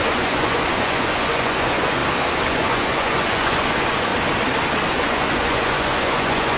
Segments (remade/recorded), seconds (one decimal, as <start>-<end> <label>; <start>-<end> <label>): 0.0-2.0 remade; 2.0-2.5 recorded; 2.5-4.1 remade; 4.1-4.9 recorded; 4.9-6.6 remade

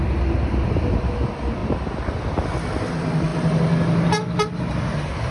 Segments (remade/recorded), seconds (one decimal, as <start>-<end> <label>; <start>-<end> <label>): 0.0-5.3 recorded